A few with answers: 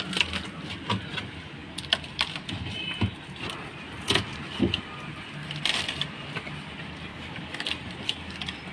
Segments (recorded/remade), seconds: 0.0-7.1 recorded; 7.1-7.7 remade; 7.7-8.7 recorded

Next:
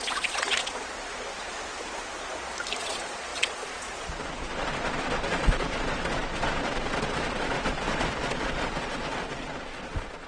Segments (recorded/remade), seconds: 0.0-0.8 remade; 0.8-2.8 recorded; 2.8-10.3 remade

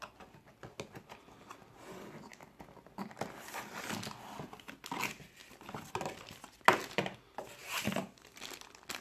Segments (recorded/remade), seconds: 0.0-9.0 recorded

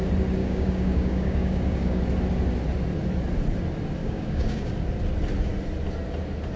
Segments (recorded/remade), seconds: 0.0-0.4 recorded; 0.4-2.0 remade; 2.0-4.0 recorded; 4.0-4.7 remade; 4.7-6.6 recorded

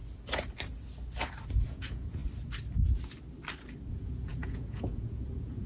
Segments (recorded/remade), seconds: 0.0-1.6 recorded; 1.6-2.2 remade; 2.2-3.9 recorded; 3.9-5.7 remade

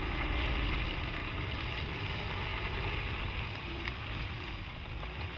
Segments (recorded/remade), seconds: 0.0-5.4 recorded

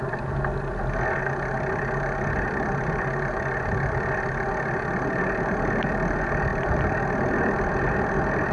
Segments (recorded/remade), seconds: 0.0-8.5 recorded